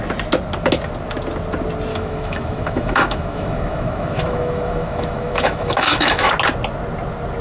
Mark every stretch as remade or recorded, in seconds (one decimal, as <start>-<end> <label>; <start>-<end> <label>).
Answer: 0.0-1.9 recorded; 1.9-6.3 remade; 6.3-7.4 recorded